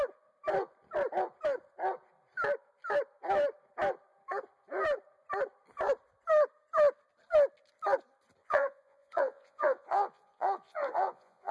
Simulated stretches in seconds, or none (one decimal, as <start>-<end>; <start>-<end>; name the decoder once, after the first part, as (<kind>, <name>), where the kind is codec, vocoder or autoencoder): 8.4-11.5 (vocoder, Vocos)